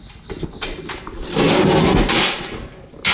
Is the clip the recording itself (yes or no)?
yes